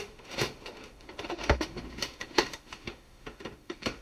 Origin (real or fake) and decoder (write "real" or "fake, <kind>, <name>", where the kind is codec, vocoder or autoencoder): fake, autoencoder, DAC-VAE